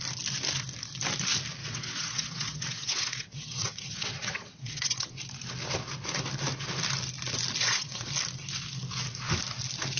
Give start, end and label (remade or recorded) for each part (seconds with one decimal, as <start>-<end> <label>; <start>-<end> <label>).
0.0-1.6 recorded; 1.6-5.1 remade; 5.1-7.6 recorded; 7.6-8.1 remade; 8.1-10.0 recorded